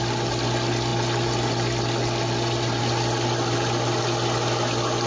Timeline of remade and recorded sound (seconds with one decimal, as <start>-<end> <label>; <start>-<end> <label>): 0.0-5.1 recorded